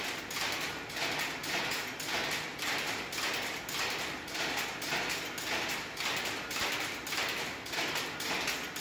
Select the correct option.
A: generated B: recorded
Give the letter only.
B